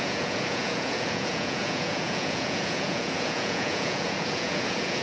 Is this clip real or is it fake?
fake